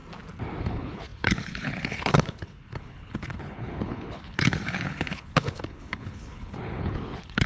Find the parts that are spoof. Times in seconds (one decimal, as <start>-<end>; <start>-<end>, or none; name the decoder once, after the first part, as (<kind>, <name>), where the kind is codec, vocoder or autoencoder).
0.6-7.5 (codec, HILCodec)